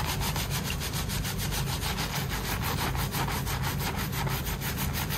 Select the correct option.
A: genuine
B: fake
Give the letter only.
A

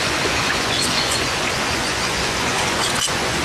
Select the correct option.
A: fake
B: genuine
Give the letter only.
A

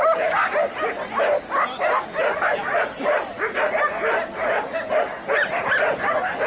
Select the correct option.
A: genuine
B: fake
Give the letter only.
A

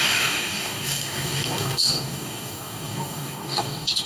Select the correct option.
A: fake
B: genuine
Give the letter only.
A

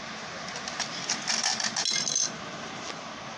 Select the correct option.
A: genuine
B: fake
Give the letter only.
A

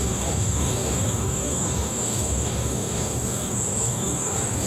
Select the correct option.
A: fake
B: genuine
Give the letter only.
A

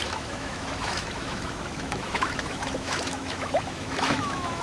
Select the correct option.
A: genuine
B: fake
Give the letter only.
B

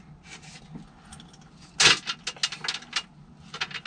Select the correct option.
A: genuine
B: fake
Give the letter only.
A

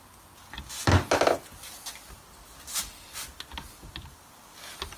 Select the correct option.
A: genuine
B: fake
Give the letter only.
A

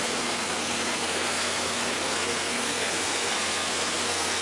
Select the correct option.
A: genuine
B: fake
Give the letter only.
B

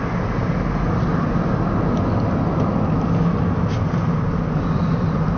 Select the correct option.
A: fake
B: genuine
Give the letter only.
B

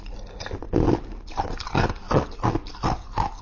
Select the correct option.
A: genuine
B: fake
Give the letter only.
A